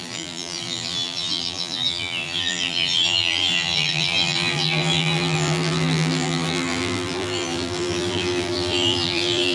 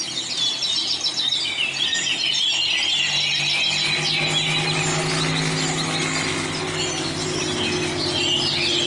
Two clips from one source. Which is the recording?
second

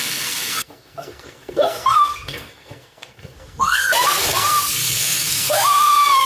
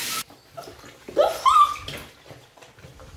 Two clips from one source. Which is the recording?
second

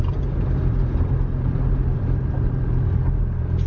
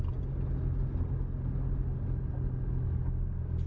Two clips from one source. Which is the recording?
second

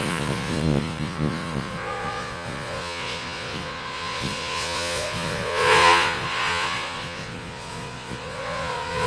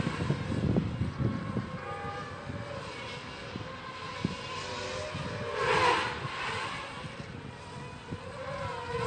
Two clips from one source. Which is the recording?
second